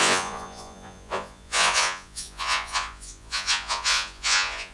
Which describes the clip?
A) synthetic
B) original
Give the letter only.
A